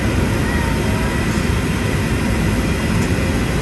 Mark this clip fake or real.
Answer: real